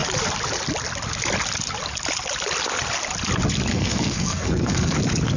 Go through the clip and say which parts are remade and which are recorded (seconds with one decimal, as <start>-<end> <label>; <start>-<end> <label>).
0.0-3.7 recorded; 3.7-5.0 remade; 5.0-5.4 recorded